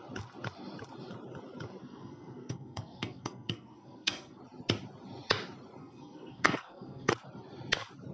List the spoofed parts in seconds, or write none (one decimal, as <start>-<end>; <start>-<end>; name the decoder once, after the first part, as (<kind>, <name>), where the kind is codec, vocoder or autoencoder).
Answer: 1.8-4.4 (codec, SNAC); 5.8-7.1